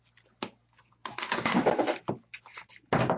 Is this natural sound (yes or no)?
yes